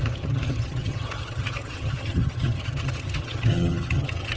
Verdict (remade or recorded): remade